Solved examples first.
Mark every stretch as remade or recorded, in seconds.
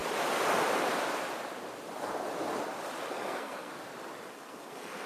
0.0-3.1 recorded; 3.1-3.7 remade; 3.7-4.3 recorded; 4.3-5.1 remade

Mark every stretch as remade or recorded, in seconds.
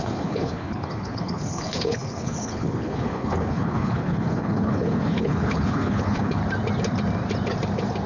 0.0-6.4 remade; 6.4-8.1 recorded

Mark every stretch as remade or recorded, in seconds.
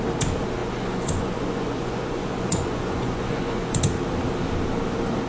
0.0-0.6 recorded; 0.6-3.8 remade; 3.8-5.3 recorded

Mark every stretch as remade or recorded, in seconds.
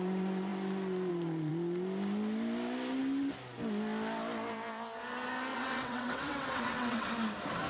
0.0-5.5 recorded; 5.5-7.1 remade; 7.1-7.7 recorded